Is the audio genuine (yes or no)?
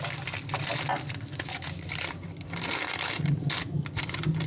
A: yes